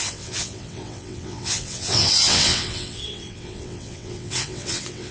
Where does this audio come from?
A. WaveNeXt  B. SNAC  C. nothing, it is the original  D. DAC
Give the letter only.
A